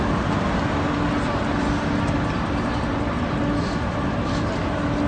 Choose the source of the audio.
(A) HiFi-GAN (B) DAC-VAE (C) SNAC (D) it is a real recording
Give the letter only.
D